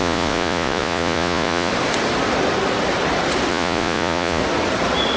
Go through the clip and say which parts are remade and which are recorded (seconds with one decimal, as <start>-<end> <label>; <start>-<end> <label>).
0.0-1.7 remade; 1.7-3.5 recorded; 3.5-4.4 remade; 4.4-5.2 recorded